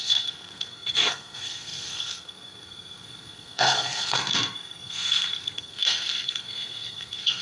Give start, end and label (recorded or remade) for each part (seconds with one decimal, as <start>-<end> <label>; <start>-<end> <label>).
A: 0.0-7.4 remade